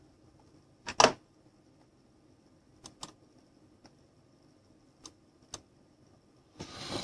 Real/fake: real